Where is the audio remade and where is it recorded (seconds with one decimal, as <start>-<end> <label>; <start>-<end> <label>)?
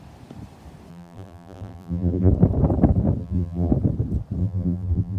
0.0-0.9 recorded; 0.9-2.3 remade; 2.3-3.2 recorded; 3.2-3.7 remade; 3.7-4.4 recorded; 4.4-5.2 remade